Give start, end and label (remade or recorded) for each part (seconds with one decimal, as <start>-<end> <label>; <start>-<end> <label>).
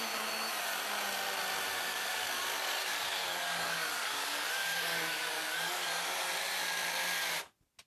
0.0-1.7 recorded; 1.7-5.9 remade; 5.9-7.9 recorded